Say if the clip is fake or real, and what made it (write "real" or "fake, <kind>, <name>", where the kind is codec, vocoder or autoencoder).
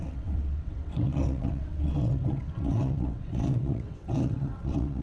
fake, vocoder, WaveNeXt